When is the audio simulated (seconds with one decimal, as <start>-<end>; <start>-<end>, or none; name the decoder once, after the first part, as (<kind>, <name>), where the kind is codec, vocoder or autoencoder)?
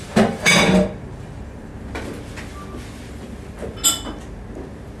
0.0-1.7 (vocoder, BigVGAN v2)